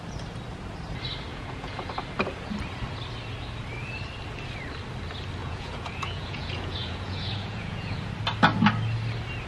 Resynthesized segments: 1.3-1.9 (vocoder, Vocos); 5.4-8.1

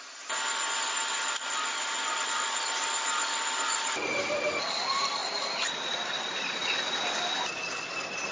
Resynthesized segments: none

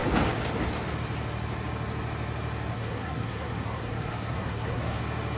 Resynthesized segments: 2.7-5.0 (codec, SNAC)